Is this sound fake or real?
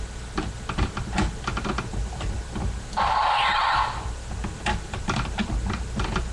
real